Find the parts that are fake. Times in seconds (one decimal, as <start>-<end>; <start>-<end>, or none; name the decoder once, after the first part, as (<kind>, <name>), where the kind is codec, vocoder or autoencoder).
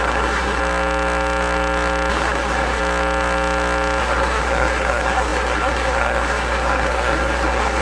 0.0-0.6 (codec, SNAC); 2.1-2.8; 4.0-7.8